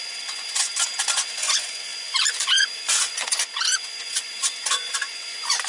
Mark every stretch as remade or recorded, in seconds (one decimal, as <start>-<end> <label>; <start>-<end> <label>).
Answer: 0.0-0.7 remade; 0.7-1.2 recorded; 1.2-5.7 remade

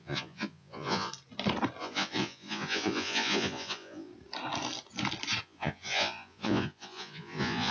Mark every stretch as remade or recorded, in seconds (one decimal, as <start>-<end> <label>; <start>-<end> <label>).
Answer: 0.0-1.1 remade; 1.1-1.8 recorded; 1.8-4.1 remade; 4.1-5.4 recorded; 5.4-7.7 remade

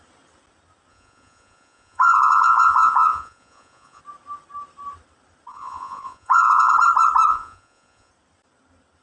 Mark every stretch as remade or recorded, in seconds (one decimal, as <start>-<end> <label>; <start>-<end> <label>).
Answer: 0.0-0.9 recorded; 0.9-4.0 remade; 4.0-5.5 recorded; 5.5-6.7 remade; 6.7-7.3 recorded; 7.3-8.1 remade; 8.1-9.0 recorded